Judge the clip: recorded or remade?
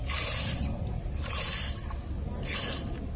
recorded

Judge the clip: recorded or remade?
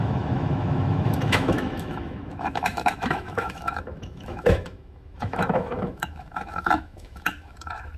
remade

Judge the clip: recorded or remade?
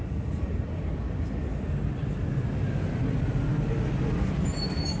recorded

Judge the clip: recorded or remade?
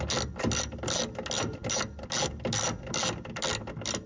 recorded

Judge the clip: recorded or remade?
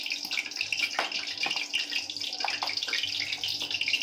recorded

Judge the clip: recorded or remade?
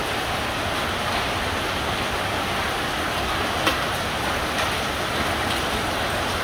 recorded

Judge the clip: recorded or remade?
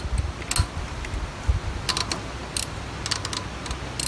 recorded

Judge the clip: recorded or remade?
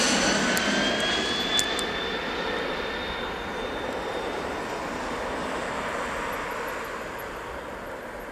recorded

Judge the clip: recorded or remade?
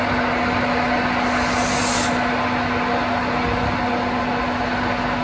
recorded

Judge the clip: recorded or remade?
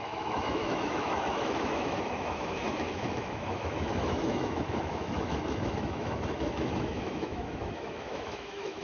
remade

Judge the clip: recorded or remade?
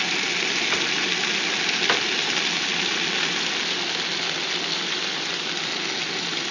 recorded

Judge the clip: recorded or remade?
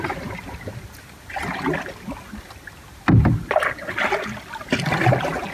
recorded